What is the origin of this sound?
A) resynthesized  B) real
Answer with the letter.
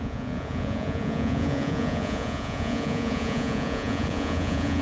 A